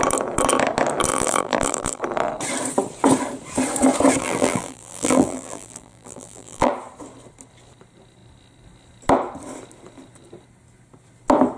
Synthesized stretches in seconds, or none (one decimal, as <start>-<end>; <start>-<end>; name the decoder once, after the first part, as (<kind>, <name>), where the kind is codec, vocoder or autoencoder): 1.1-2.0 (vocoder, BigVGAN v2); 4.2-6.7